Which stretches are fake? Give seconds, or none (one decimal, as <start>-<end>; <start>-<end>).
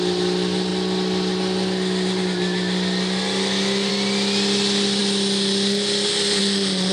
none